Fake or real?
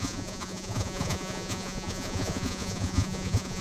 fake